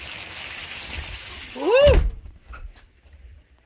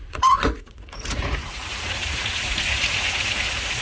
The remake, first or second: second